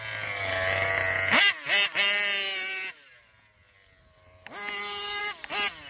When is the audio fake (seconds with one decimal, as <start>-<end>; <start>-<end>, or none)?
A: none